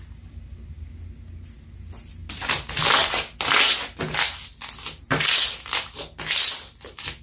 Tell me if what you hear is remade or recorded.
recorded